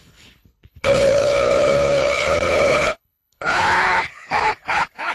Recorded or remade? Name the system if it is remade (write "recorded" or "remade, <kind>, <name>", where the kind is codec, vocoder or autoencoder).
remade, codec, HILCodec